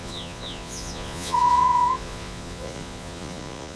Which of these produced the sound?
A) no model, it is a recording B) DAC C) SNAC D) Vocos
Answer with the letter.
D